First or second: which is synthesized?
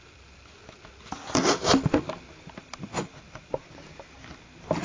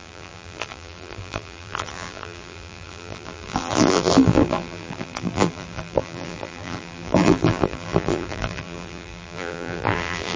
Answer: second